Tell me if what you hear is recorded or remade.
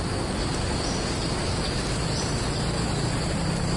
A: recorded